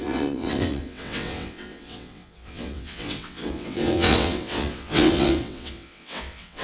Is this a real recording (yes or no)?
no